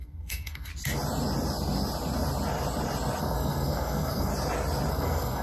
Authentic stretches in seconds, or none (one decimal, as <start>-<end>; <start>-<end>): 0.7-3.2; 4.3-4.9